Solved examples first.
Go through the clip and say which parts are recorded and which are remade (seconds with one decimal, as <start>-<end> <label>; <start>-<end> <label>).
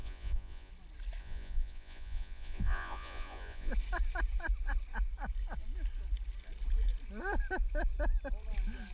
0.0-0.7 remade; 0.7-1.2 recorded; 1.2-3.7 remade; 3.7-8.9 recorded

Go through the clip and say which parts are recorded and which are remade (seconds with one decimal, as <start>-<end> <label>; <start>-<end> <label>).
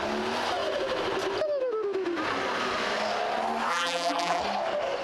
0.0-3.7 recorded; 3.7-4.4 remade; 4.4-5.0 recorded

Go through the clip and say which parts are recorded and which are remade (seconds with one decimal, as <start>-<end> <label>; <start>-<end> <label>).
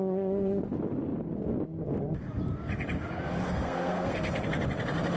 0.0-3.5 recorded; 3.5-4.6 remade; 4.6-5.2 recorded